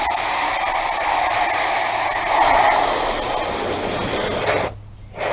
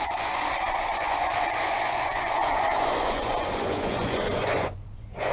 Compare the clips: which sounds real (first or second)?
first